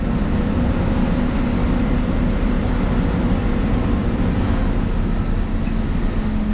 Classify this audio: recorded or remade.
recorded